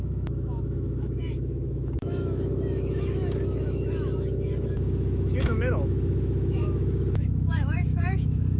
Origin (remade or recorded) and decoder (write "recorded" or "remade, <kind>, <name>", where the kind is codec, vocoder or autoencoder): remade, autoencoder, DAC-VAE